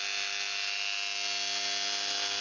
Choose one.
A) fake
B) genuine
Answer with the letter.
B